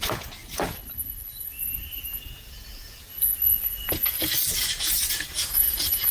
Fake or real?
fake